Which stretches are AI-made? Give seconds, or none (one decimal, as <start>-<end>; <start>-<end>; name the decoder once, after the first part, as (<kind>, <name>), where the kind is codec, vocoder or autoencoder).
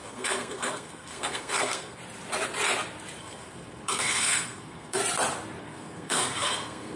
0.0-2.0 (codec, SNAC); 3.2-5.0; 5.6-7.0